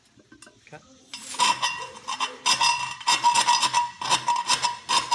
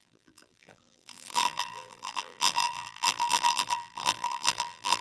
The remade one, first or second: second